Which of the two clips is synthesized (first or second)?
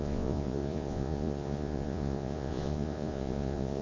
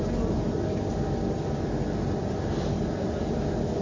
first